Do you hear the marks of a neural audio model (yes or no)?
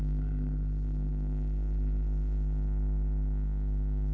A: yes